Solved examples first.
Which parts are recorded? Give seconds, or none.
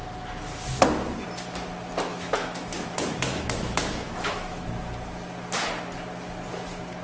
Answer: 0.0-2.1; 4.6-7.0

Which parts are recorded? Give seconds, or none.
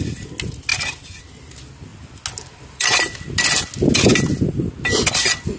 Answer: 0.0-5.6